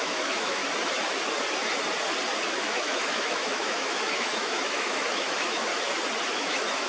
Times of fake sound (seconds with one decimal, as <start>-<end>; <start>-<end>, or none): 0.0-0.6; 2.5-5.7; 6.3-6.9